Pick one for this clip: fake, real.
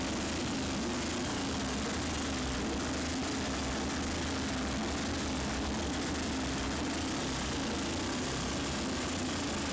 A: real